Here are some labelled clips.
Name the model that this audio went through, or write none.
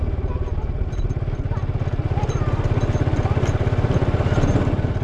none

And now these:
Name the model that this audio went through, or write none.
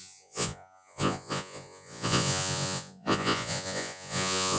vocoder, Vocos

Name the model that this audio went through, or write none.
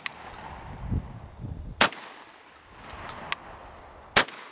none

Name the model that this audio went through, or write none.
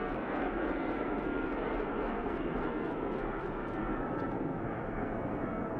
codec, SNAC